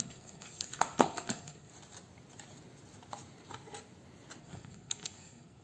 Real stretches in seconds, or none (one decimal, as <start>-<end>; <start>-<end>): 1.7-4.4